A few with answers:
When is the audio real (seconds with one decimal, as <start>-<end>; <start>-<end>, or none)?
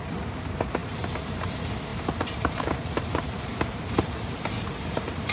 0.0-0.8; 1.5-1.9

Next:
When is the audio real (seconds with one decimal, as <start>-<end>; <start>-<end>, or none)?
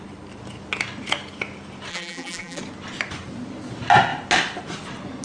0.0-1.9; 2.6-5.2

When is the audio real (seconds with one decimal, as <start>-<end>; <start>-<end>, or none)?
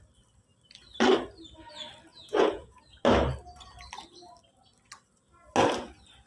0.0-2.1; 2.8-6.3